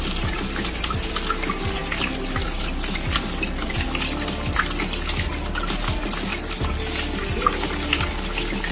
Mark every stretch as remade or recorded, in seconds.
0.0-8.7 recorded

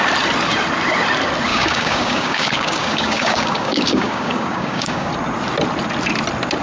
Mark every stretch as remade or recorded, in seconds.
0.0-1.5 recorded; 1.5-5.1 remade; 5.1-6.6 recorded

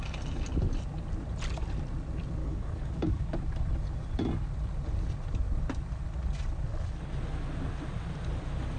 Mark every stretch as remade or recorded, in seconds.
0.0-2.4 recorded; 2.4-3.5 remade; 3.5-8.8 recorded

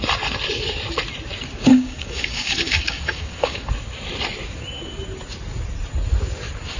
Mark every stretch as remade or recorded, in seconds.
0.0-1.7 recorded; 1.7-3.7 remade; 3.7-6.8 recorded